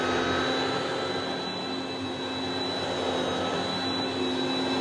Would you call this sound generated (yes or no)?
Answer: no